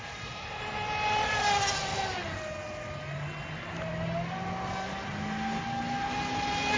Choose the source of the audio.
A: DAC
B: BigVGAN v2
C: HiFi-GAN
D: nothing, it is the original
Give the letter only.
D